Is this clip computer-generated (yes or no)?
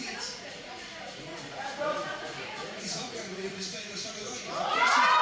yes